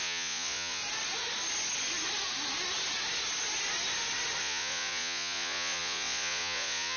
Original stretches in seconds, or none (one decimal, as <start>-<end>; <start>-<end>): 0.8-4.4